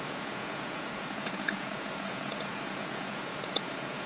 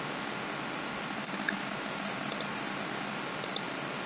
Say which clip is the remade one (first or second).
first